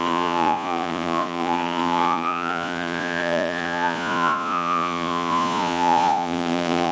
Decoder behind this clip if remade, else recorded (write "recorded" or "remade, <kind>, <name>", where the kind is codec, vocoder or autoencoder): remade, vocoder, Vocos